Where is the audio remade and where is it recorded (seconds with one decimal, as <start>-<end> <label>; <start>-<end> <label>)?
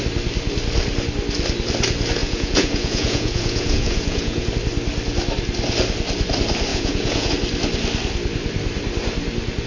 0.0-2.2 recorded; 2.2-4.5 remade; 4.5-6.7 recorded; 6.7-7.3 remade; 7.3-9.7 recorded